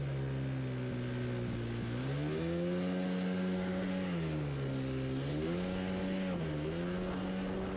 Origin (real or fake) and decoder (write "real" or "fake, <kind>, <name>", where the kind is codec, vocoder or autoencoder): real